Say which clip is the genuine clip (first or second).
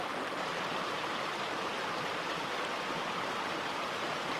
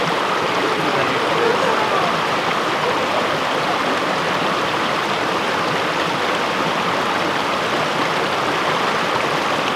second